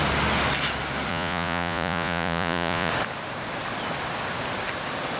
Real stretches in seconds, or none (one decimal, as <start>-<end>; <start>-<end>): 0.0-1.1; 2.9-5.2